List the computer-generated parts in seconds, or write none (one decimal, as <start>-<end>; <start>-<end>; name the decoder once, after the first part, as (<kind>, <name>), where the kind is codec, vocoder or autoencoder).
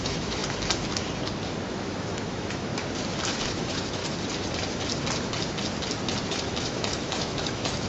0.0-0.4 (autoencoder, DAC-VAE); 1.7-2.7; 3.4-4.0; 6.3-7.9